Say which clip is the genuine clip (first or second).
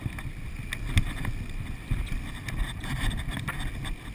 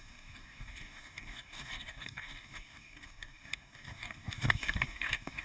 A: first